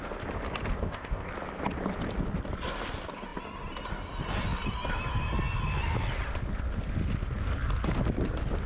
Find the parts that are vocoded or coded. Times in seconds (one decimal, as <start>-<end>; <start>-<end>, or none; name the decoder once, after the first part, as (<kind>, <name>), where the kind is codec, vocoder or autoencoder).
0.8-1.3 (codec, ZipCodec)